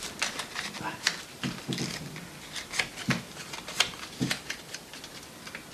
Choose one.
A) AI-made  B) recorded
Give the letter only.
B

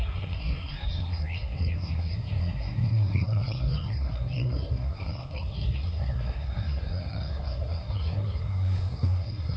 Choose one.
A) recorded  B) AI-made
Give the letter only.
B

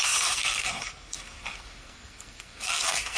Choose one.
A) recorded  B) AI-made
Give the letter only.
B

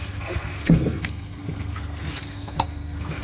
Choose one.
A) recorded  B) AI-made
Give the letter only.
B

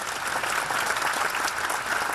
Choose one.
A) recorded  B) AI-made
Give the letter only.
A